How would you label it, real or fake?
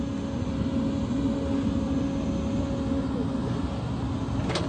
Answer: real